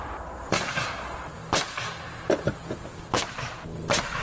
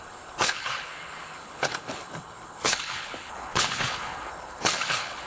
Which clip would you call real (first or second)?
first